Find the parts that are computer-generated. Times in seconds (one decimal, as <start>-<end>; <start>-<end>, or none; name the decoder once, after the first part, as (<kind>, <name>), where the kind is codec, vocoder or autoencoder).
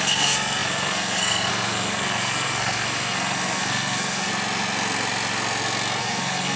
0.0-4.3 (codec, SNAC); 6.0-6.6